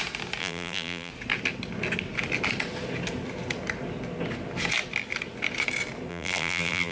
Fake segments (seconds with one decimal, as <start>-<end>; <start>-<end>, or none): 0.4-1.1; 6.1-6.9